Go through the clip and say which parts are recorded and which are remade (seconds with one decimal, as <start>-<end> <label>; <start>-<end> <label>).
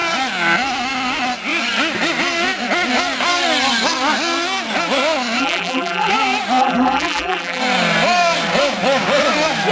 0.0-5.4 recorded; 5.4-6.1 remade; 6.1-6.6 recorded; 6.6-7.6 remade; 7.6-9.7 recorded